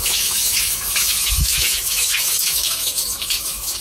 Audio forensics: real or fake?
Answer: fake